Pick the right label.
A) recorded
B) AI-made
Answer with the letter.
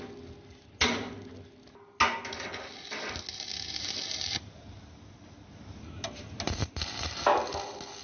A